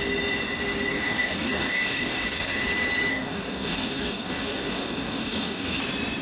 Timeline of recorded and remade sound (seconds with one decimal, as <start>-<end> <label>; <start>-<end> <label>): 0.0-0.9 recorded; 0.9-2.6 remade; 2.6-3.1 recorded; 3.1-5.8 remade; 5.8-6.2 recorded